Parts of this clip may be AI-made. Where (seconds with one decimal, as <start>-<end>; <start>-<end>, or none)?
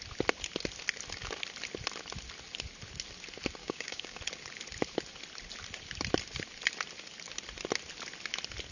3.6-4.2